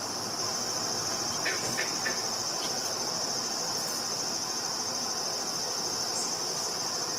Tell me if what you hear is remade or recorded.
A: recorded